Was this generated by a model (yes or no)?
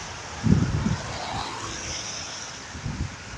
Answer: no